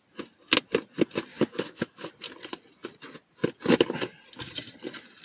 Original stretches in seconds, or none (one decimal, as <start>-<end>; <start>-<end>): 0.0-1.3; 2.1-5.2

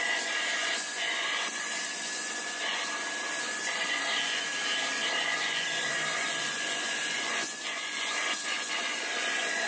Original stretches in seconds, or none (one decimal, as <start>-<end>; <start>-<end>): 2.8-3.4; 4.5-5.2

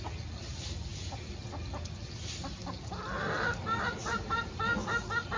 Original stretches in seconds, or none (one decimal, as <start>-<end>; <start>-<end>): 0.0-4.0; 4.6-5.4

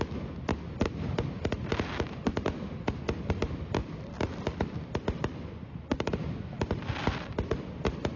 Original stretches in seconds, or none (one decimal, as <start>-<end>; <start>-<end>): 0.0-0.5; 1.1-3.8; 4.7-8.2

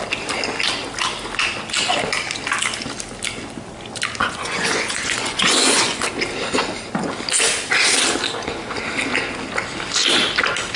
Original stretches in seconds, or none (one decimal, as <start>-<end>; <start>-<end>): 0.0-4.2; 6.0-10.8

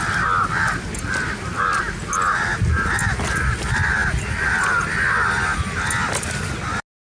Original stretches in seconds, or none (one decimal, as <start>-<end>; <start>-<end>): 0.0-7.2